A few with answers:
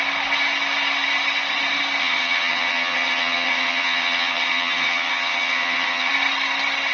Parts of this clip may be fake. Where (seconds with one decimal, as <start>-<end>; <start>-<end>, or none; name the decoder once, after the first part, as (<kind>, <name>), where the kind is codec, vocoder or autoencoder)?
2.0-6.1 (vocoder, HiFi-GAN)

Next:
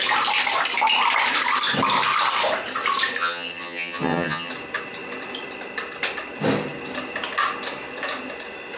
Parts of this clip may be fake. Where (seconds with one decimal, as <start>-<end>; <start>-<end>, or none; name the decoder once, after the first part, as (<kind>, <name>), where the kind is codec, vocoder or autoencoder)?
3.2-4.5 (vocoder, HiFi-GAN)

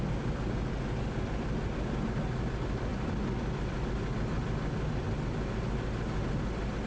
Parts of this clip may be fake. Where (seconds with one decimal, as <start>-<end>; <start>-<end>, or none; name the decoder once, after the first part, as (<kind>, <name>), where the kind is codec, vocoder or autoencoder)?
none